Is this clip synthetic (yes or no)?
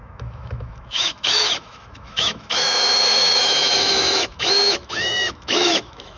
yes